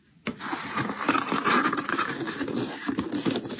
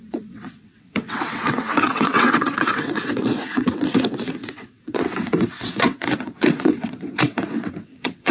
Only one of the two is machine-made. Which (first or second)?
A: second